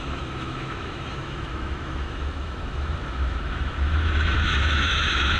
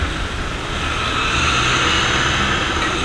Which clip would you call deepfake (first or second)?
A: first